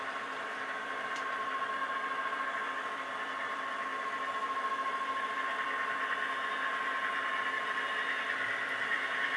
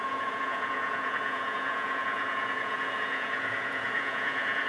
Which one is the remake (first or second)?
second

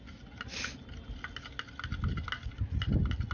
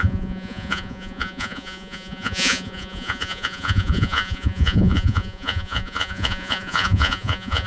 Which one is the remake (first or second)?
second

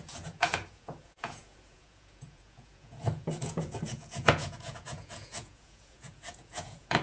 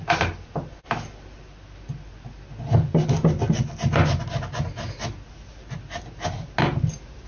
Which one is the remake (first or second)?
first